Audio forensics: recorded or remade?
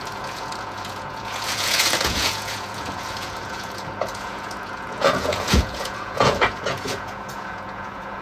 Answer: remade